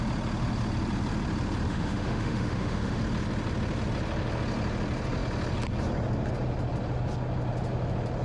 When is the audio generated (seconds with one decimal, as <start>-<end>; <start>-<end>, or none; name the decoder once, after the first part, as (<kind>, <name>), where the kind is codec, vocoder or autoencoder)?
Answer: 1.7-3.0 (autoencoder, DAC-VAE)